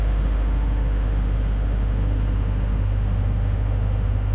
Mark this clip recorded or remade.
remade